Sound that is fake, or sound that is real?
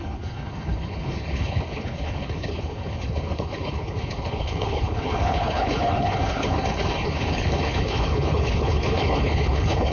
fake